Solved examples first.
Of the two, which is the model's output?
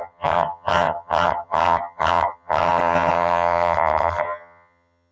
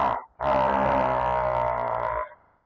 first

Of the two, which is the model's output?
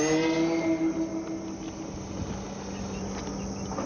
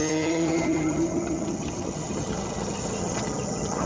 second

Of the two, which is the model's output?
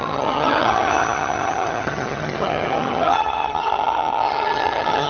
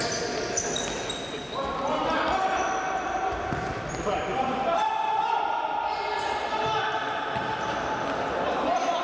first